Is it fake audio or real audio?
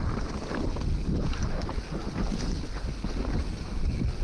real